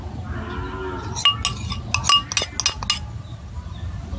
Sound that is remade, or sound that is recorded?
recorded